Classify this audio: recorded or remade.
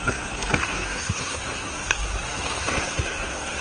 remade